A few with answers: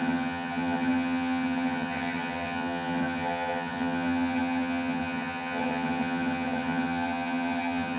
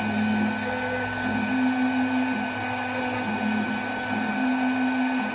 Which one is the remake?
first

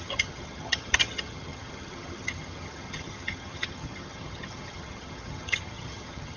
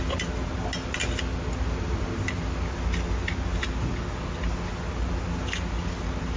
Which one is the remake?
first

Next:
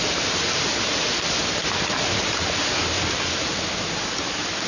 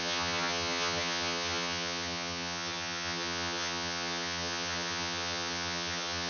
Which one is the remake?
second